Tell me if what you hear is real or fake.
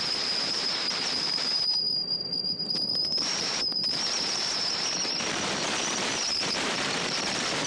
fake